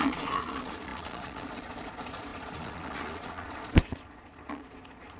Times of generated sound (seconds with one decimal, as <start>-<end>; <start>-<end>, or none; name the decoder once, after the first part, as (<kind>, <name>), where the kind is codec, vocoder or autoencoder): 0.0-5.2 (vocoder, Vocos)

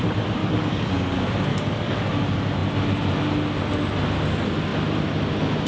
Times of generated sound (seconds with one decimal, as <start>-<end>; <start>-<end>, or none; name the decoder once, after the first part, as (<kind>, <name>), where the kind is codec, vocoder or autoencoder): 0.4-0.9 (codec, DAC); 1.5-2.0